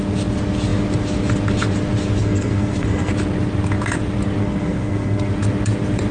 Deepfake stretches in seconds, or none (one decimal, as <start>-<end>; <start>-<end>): 2.2-3.1; 4.4-5.3